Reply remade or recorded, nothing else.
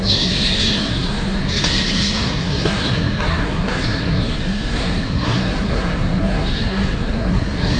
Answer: remade